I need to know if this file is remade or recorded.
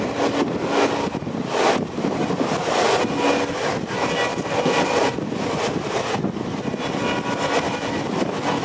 recorded